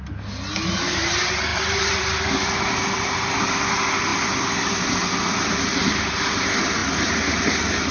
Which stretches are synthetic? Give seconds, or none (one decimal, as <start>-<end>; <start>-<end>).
1.5-3.4

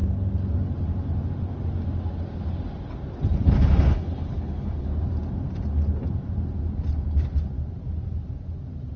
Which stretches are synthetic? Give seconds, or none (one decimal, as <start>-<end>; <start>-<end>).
3.4-4.9

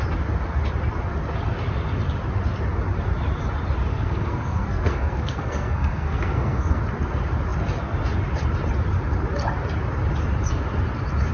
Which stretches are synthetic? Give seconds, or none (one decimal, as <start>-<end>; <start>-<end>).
3.9-6.8

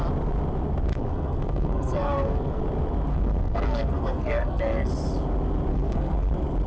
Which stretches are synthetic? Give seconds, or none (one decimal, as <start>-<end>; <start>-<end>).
0.9-2.6; 3.1-4.9; 5.7-6.3

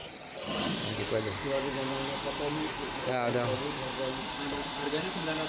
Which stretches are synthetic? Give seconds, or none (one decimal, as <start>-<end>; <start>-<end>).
0.0-0.7

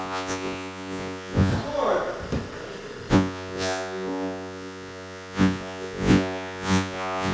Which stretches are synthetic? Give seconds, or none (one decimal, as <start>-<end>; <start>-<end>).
0.0-1.5; 3.1-7.3